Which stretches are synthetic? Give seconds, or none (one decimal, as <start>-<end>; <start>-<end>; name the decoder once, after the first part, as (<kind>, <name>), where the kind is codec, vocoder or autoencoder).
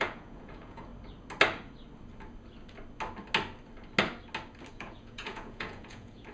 0.0-0.9 (vocoder, Vocos); 4.7-6.3